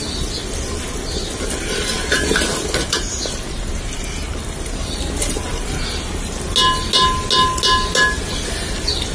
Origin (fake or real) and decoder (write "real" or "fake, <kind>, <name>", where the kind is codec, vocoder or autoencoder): real